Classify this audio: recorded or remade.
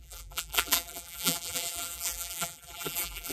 remade